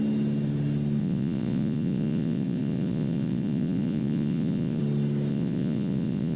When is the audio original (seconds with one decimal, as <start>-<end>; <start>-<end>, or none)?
0.0-1.0; 4.8-5.3